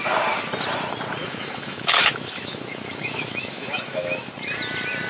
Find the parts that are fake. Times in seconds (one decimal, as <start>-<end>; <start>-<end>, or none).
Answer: 1.2-4.3